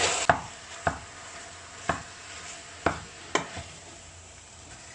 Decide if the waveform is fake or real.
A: real